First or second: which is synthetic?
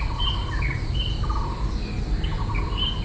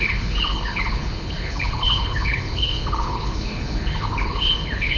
second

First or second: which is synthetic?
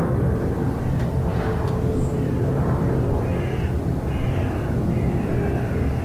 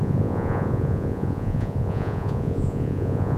second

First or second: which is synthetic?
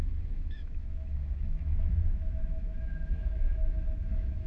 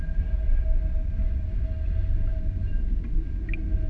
first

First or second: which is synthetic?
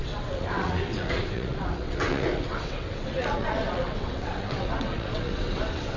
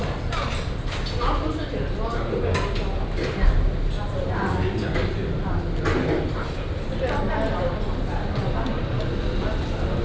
first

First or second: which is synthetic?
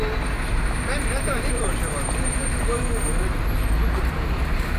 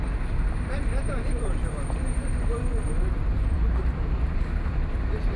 second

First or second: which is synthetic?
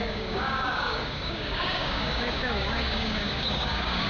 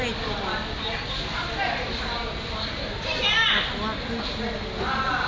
first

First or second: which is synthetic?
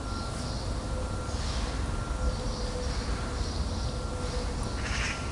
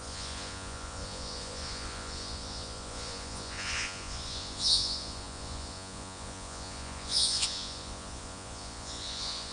second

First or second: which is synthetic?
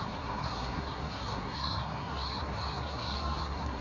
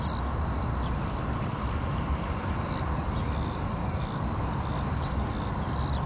first